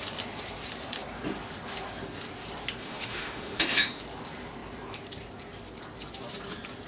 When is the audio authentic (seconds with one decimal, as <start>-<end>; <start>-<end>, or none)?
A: 0.0-2.8; 4.0-6.9